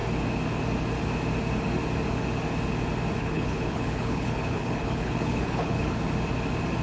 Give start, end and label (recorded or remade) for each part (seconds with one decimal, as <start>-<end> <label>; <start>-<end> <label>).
0.0-3.2 recorded; 3.2-6.0 remade; 6.0-6.8 recorded